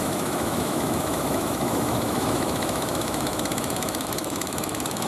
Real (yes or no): no